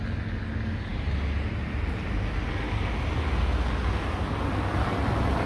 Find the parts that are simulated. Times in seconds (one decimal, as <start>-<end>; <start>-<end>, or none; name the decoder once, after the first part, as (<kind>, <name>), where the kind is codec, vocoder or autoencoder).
none

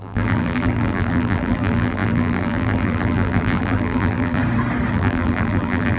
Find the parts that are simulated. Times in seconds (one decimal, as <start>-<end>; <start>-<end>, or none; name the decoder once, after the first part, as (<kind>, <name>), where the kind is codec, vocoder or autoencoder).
0.0-4.4 (vocoder, BigVGAN v2); 4.9-6.0

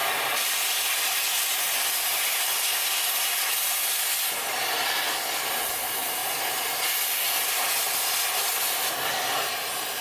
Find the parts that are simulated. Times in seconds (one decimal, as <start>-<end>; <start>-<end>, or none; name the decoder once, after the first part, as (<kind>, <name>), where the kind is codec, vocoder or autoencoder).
0.0-0.6 (vocoder, BigVGAN v2)

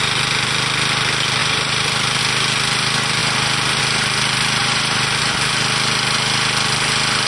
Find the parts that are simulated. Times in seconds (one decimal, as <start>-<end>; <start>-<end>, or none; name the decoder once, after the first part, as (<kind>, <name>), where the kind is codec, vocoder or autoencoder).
1.4-2.2 (vocoder, BigVGAN v2); 4.6-5.2

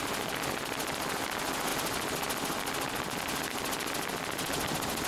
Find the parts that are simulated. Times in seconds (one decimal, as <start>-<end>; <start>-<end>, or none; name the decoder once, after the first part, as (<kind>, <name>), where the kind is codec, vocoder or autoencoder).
none

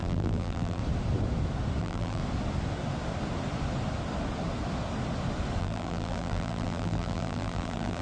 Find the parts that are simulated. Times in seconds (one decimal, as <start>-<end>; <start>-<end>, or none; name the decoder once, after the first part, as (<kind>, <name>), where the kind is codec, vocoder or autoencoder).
0.0-0.8 (vocoder, BigVGAN v2); 1.8-2.2; 5.6-8.0

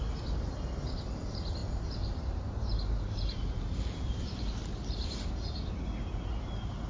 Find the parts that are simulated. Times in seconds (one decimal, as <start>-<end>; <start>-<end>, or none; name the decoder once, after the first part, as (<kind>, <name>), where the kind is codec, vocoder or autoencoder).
1.6-5.7 (vocoder, BigVGAN v2)

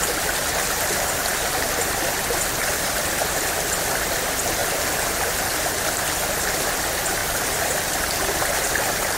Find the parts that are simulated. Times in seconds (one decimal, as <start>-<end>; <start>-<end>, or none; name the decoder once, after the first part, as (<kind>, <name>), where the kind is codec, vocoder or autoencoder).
0.0-9.2 (vocoder, BigVGAN v2)